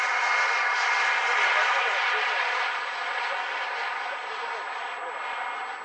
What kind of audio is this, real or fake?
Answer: real